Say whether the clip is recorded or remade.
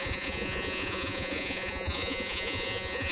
remade